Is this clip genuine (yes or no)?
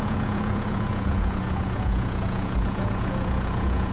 no